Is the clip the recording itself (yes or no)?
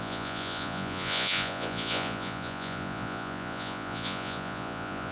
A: no